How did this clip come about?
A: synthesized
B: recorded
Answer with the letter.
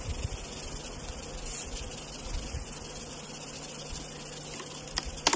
B